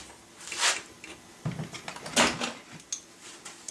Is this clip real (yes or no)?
yes